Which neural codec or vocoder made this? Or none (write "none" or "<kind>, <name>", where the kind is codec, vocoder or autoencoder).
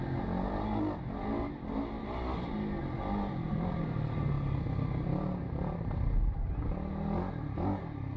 none